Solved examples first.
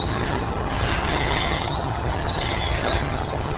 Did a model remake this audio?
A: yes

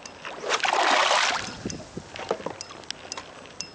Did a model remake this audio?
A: no